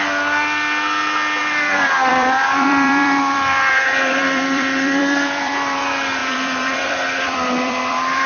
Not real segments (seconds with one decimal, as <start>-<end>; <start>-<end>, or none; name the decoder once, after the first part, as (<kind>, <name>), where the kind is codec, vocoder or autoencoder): 1.4-5.8 (vocoder, BigVGAN v2); 6.2-8.3